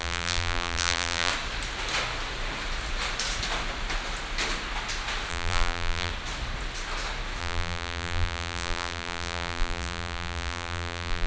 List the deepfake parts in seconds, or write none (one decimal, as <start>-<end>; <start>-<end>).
0.0-1.3; 5.3-6.1; 7.4-11.3